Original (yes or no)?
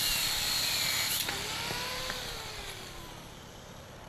no